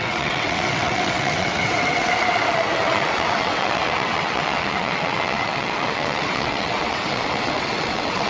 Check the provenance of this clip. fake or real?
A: fake